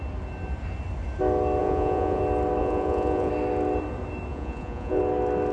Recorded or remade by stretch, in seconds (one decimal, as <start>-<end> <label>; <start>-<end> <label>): 0.0-1.6 recorded; 1.6-2.2 remade; 2.2-2.6 recorded; 2.6-3.3 remade; 3.3-4.3 recorded; 4.3-5.0 remade; 5.0-5.5 recorded